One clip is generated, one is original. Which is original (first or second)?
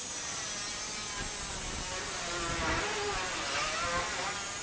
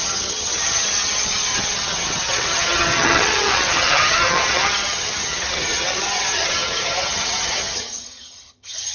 first